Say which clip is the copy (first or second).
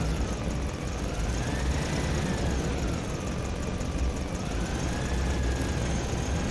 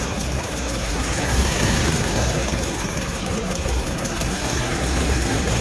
second